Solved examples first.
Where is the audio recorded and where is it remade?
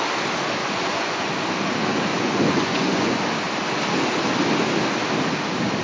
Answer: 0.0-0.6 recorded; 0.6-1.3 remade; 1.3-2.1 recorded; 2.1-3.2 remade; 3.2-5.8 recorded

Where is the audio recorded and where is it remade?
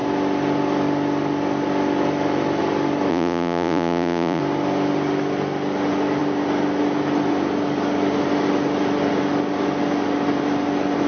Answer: 0.0-3.1 recorded; 3.1-4.4 remade; 4.4-11.1 recorded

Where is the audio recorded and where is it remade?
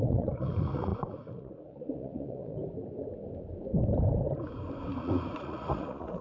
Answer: 0.0-2.6 remade; 2.6-5.0 recorded; 5.0-6.2 remade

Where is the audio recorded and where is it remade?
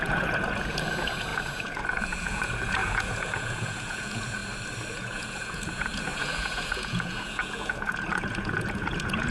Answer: 0.0-4.4 remade; 4.4-4.9 recorded; 4.9-9.3 remade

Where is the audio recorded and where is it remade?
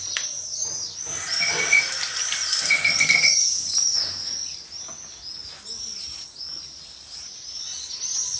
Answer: 0.0-8.4 recorded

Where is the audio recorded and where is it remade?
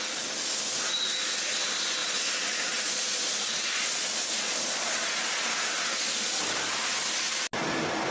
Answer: 0.0-2.0 recorded; 2.0-6.4 remade; 6.4-8.1 recorded